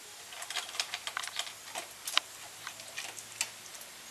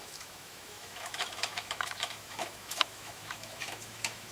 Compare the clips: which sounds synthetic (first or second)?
second